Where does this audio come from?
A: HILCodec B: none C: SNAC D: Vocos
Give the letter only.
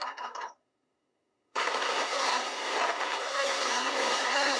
C